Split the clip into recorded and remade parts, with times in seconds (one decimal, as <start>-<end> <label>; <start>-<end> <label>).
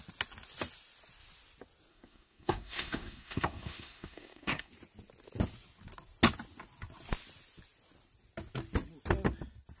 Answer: 0.0-1.9 recorded; 1.9-4.7 remade; 4.7-9.8 recorded